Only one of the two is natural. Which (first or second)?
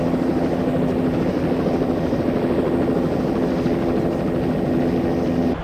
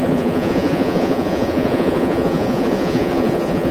first